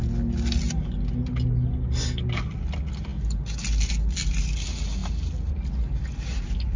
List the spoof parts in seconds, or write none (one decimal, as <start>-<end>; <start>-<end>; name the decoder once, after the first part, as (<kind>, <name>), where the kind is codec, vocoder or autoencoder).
none